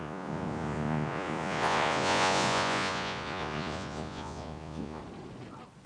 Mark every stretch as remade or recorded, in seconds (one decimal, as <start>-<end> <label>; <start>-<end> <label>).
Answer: 0.0-5.0 remade; 5.0-5.9 recorded